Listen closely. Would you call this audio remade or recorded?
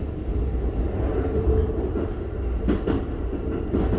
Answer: recorded